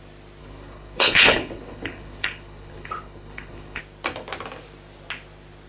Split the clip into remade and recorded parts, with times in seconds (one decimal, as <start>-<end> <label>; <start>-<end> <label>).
0.0-0.4 recorded; 0.4-3.8 remade; 3.8-5.7 recorded